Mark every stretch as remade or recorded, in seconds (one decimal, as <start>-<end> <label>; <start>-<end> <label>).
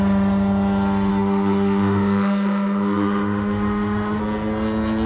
0.0-1.1 recorded; 1.1-4.2 remade; 4.2-5.1 recorded